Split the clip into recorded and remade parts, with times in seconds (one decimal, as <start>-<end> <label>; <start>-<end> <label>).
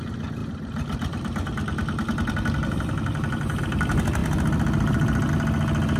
0.0-6.0 recorded